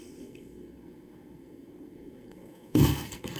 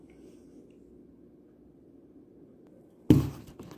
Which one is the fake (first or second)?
first